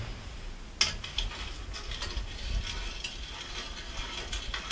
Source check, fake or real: real